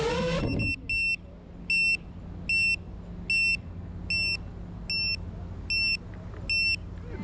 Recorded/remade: recorded